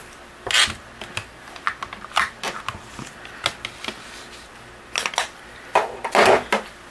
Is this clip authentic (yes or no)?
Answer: yes